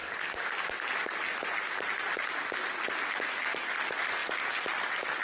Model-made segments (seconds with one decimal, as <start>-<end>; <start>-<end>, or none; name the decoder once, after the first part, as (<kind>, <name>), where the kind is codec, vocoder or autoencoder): none